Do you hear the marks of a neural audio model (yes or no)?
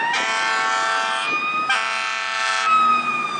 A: no